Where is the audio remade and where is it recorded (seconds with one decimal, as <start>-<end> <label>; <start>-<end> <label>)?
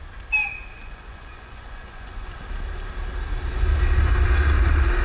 0.0-0.8 recorded; 0.8-2.3 remade; 2.3-5.0 recorded